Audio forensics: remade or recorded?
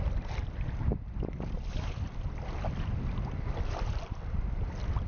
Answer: recorded